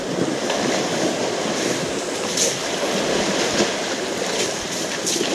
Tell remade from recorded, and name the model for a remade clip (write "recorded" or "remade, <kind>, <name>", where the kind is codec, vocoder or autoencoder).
recorded